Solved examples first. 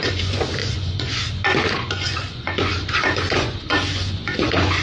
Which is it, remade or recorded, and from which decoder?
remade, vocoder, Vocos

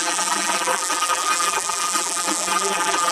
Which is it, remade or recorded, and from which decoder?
remade, vocoder, BigVGAN v2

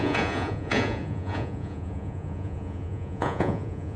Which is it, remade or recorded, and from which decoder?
remade, vocoder, Vocos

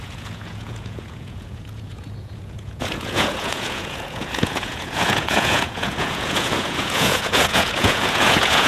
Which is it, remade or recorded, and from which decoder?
remade, vocoder, Vocos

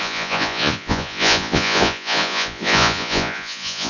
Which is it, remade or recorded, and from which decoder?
remade, vocoder, Vocos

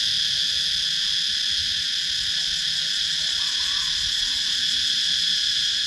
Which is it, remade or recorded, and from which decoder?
recorded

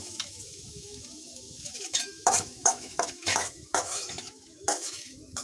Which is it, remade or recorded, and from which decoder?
remade, autoencoder, DAC-VAE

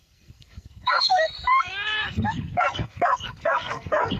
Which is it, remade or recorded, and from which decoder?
remade, codec, SNAC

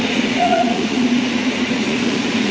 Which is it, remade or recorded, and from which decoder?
remade, vocoder, Vocos